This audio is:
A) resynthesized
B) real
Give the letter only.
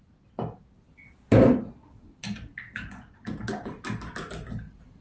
B